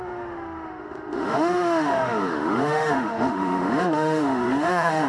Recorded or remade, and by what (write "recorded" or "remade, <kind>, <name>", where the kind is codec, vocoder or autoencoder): remade, autoencoder, DAC-VAE